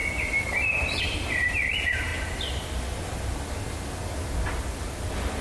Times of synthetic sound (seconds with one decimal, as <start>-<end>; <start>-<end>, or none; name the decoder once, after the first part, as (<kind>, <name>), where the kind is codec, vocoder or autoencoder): 0.0-1.0 (vocoder, BigVGAN v2)

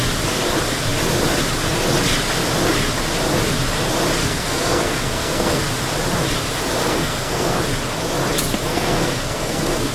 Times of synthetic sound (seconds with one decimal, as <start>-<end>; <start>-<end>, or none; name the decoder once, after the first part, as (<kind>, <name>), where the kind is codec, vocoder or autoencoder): 4.2-5.6 (codec, SNAC); 6.8-7.6; 8.7-9.9